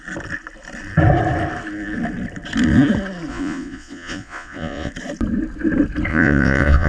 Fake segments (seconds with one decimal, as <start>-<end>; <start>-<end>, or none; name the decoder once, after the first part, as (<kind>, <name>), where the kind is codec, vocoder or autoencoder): 3.3-4.9 (vocoder, Vocos); 6.1-6.9